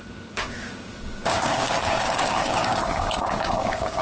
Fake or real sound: fake